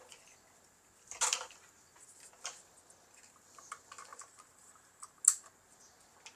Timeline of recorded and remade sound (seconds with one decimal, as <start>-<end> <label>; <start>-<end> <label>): 0.0-4.1 recorded; 4.1-5.2 remade; 5.2-6.4 recorded